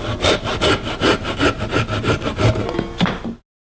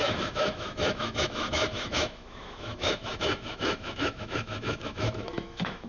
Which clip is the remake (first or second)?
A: second